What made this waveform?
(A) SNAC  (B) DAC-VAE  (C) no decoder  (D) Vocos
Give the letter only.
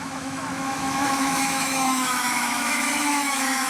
B